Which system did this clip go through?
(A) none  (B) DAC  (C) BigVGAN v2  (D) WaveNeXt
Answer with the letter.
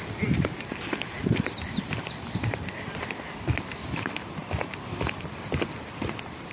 C